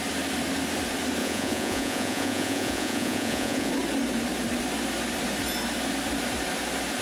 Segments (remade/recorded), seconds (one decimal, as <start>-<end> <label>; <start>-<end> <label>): 0.0-1.2 recorded; 1.2-3.7 remade; 3.7-7.0 recorded